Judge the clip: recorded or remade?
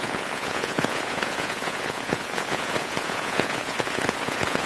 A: remade